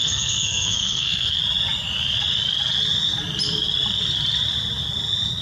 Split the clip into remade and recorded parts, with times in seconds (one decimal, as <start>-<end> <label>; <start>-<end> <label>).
0.0-1.4 remade; 1.4-5.4 recorded